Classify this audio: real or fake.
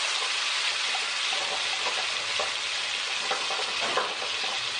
real